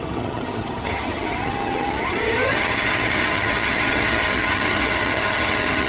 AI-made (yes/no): yes